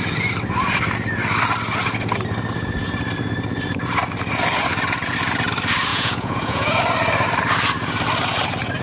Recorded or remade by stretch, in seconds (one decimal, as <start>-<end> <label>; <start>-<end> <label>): 0.0-5.9 recorded; 5.9-6.8 remade; 6.8-8.8 recorded